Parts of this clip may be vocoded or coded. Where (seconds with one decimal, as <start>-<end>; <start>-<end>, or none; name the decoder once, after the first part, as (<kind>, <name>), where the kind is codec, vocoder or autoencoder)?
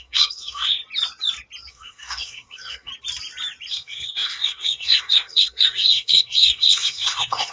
0.0-0.8 (codec, SNAC); 1.7-2.9; 3.7-7.5